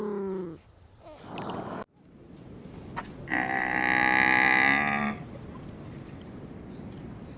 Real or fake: real